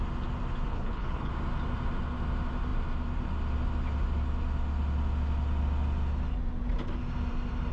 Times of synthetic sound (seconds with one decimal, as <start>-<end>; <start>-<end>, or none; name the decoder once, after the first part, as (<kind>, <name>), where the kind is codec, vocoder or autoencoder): 0.7-1.3 (codec, HILCodec)